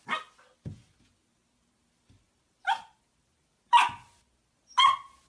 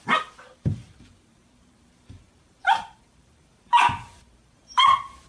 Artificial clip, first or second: second